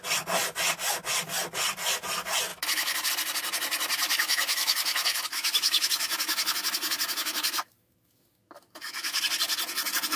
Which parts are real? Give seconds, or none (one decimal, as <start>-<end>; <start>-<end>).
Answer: 0.0-2.5; 3.1-4.0; 9.2-10.2